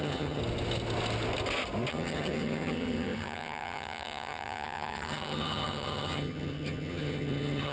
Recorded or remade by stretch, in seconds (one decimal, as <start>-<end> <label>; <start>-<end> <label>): 0.0-0.4 remade; 0.4-1.9 recorded; 1.9-7.7 remade